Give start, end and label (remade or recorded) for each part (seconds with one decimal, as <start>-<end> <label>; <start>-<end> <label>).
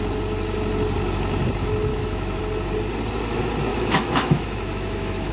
0.0-1.9 recorded; 1.9-2.4 remade; 2.4-3.7 recorded; 3.7-5.3 remade